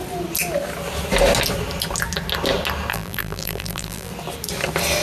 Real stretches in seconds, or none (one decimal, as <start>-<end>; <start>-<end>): 0.0-2.9; 4.1-5.0